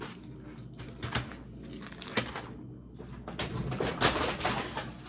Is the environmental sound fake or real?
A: real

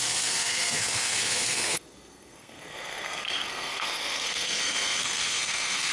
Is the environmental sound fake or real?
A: fake